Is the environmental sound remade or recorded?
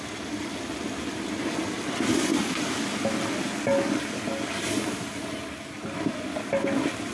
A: recorded